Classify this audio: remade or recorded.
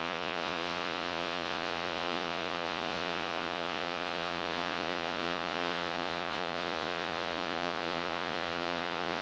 remade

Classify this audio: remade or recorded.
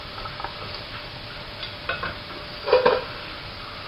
recorded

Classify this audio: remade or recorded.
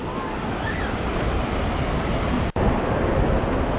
recorded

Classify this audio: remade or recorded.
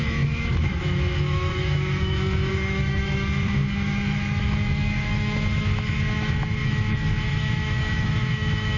remade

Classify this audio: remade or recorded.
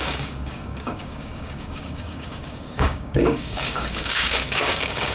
remade